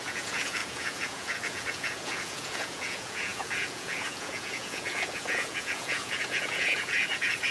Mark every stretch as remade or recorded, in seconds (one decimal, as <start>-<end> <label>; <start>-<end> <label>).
0.0-7.5 remade